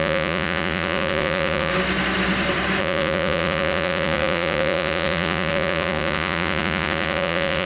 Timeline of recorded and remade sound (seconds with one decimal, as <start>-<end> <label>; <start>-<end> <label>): 0.0-1.7 remade; 1.7-2.8 recorded; 2.8-7.7 remade